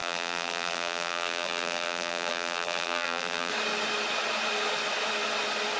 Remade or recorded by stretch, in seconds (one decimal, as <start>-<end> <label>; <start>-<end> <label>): 0.0-3.5 remade; 3.5-5.8 recorded